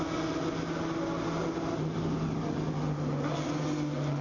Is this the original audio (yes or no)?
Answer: yes